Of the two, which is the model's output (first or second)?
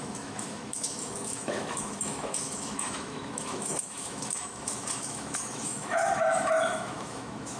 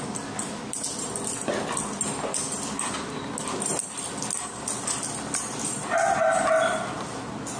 first